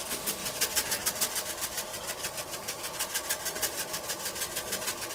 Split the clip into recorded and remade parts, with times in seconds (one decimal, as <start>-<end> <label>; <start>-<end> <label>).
0.0-5.1 recorded